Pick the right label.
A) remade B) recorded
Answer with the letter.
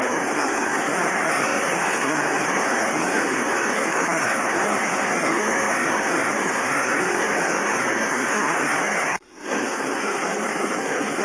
A